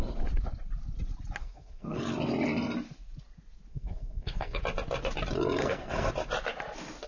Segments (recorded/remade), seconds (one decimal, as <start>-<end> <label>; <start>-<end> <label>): 0.0-1.4 recorded; 1.4-2.0 remade; 2.0-3.7 recorded; 3.7-4.6 remade; 4.6-5.6 recorded; 5.6-6.1 remade; 6.1-7.1 recorded